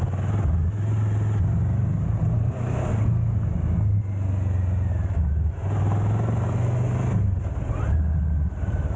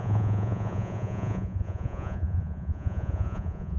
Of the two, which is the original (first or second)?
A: first